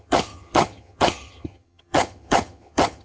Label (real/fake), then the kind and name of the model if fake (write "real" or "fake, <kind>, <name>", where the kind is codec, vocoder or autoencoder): fake, vocoder, HiFi-GAN